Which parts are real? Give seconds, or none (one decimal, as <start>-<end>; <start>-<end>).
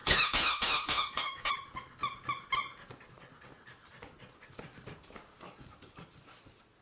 1.5-6.8